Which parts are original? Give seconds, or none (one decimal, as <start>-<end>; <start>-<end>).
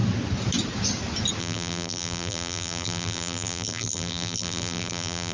0.0-1.4